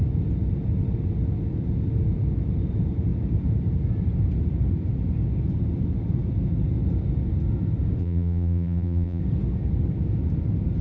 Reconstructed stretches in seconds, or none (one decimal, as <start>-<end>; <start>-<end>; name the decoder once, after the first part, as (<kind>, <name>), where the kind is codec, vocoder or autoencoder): 8.0-9.2 (vocoder, BigVGAN v2)